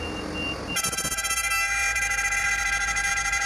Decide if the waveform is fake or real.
real